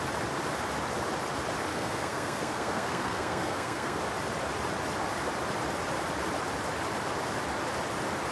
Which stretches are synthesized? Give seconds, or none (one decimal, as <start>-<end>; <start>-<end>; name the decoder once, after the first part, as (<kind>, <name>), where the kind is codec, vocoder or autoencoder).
1.7-4.0 (codec, SNAC)